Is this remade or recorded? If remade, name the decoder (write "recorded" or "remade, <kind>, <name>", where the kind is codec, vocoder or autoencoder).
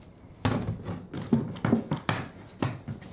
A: recorded